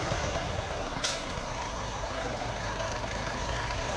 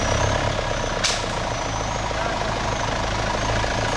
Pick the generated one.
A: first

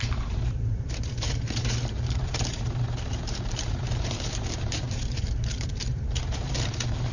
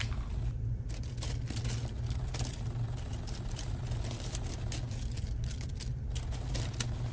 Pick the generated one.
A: first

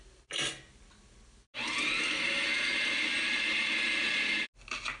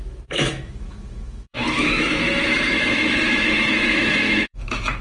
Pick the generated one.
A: second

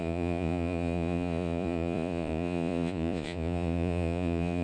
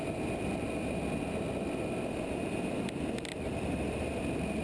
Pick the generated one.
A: first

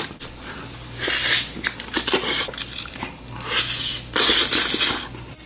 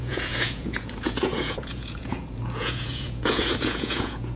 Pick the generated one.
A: second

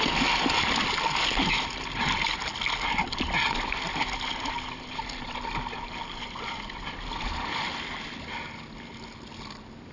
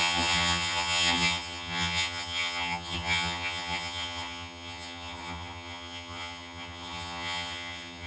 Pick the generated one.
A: second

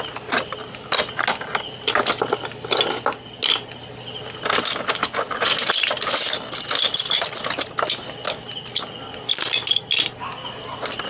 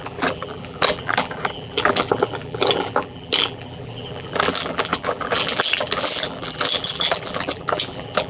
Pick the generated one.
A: second